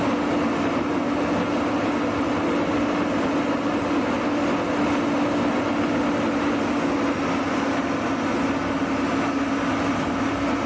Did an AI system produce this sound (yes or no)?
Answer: no